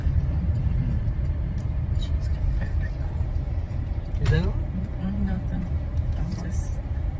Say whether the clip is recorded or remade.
remade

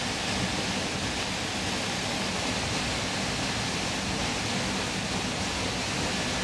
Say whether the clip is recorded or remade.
recorded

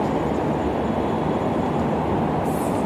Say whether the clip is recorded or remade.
recorded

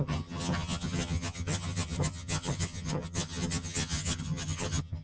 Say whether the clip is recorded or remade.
remade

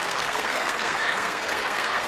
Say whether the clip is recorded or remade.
remade